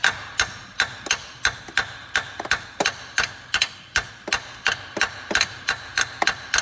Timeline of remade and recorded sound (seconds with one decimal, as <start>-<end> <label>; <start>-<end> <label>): 0.0-6.6 recorded